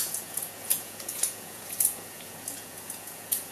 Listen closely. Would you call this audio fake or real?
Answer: fake